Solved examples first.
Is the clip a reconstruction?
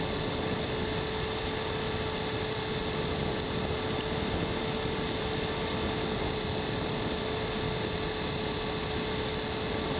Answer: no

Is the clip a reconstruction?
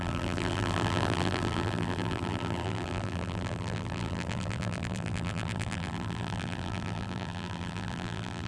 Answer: yes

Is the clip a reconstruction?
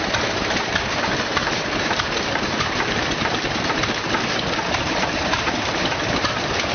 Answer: yes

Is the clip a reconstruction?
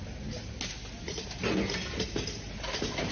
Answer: no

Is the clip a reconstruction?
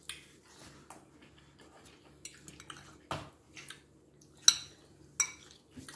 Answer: no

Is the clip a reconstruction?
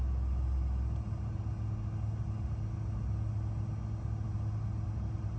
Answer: no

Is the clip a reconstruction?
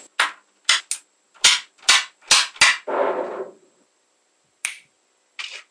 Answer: no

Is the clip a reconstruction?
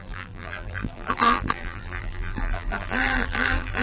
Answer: yes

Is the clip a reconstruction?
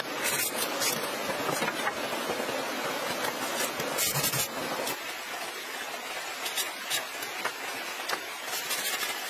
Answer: no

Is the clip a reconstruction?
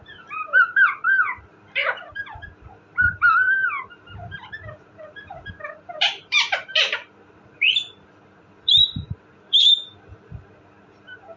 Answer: yes